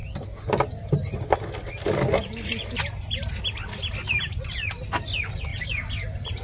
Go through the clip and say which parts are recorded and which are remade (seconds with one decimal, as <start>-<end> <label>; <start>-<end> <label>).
0.0-6.4 recorded